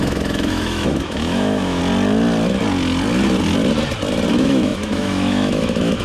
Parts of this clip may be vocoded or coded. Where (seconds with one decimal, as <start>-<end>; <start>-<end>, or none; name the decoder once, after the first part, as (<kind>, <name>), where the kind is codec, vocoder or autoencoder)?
0.0-1.8 (autoencoder, DAC-VAE); 4.3-6.0